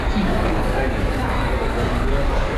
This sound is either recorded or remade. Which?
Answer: remade